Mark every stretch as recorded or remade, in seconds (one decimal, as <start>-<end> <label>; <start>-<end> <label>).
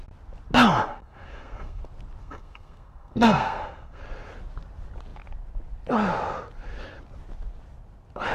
0.0-0.9 recorded; 0.9-1.8 remade; 1.8-2.2 recorded; 2.2-4.0 remade; 4.0-8.3 recorded